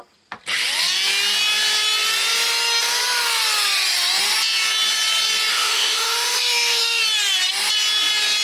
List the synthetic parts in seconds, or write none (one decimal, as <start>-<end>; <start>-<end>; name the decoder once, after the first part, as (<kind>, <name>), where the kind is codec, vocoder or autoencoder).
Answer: 5.5-7.0 (autoencoder, DAC-VAE)